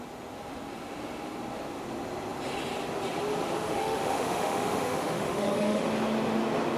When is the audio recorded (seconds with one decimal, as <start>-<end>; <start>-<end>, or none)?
0.0-3.6; 5.9-6.8